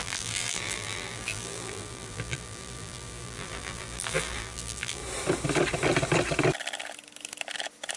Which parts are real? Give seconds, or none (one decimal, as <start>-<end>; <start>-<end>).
5.0-8.0

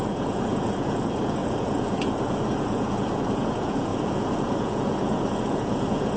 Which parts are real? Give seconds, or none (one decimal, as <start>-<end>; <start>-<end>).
none

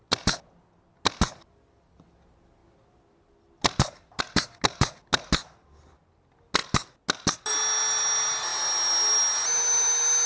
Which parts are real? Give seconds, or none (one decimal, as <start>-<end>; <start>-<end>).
0.0-10.3

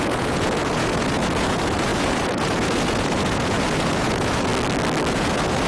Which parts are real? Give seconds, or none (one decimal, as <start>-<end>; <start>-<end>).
4.5-5.1

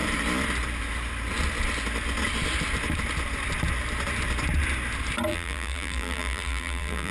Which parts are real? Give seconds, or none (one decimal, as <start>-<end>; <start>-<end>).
0.0-5.3